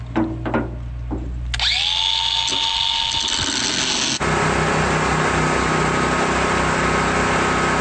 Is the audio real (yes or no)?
yes